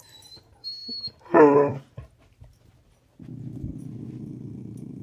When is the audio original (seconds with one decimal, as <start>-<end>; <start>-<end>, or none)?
0.0-5.0